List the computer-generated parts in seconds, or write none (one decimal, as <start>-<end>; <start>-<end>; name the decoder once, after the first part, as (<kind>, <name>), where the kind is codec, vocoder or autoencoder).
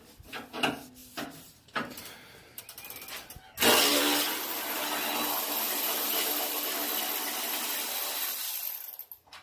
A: 1.0-2.6 (vocoder, BigVGAN v2); 3.9-6.7